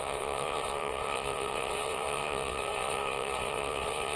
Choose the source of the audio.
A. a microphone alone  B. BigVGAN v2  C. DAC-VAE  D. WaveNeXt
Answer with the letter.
D